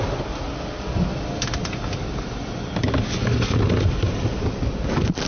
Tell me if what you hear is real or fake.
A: real